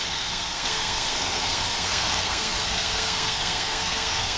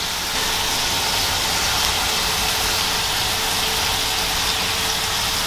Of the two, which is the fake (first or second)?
first